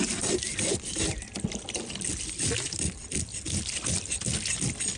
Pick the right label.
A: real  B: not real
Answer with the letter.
A